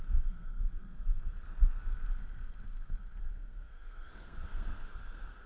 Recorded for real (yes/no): no